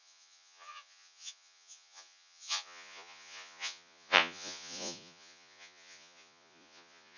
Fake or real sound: fake